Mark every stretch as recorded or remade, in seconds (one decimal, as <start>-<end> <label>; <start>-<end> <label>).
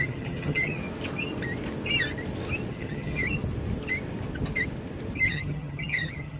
0.0-0.8 remade; 0.8-2.7 recorded; 2.7-3.2 remade; 3.2-5.3 recorded; 5.3-6.4 remade